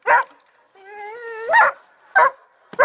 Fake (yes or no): no